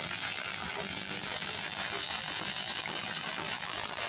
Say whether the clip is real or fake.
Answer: fake